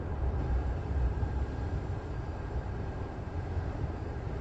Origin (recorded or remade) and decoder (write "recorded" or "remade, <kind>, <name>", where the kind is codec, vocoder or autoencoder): remade, vocoder, BigVGAN v2